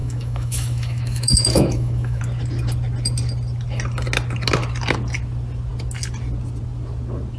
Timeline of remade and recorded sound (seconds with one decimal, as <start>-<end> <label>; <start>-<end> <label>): 0.0-2.2 remade; 2.2-7.4 recorded

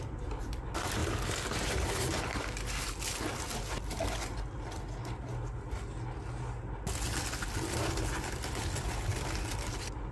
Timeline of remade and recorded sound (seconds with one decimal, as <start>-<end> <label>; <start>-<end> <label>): 0.0-10.1 recorded

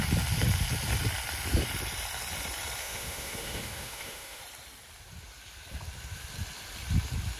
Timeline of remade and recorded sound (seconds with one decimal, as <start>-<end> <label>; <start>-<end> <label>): 0.0-2.8 recorded; 2.8-4.4 remade; 4.4-7.4 recorded